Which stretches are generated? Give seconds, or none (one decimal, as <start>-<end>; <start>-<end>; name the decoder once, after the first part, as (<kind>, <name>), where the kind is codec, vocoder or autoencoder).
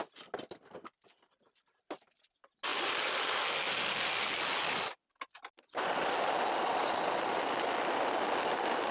none